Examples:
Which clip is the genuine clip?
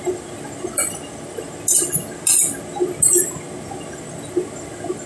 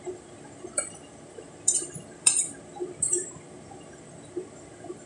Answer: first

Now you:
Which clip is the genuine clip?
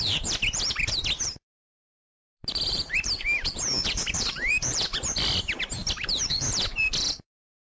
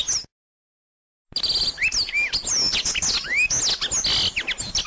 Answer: second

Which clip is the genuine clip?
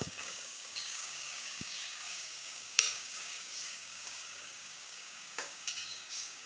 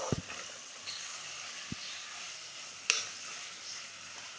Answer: second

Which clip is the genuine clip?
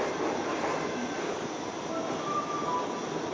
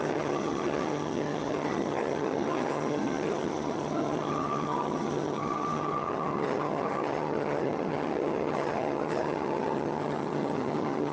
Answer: first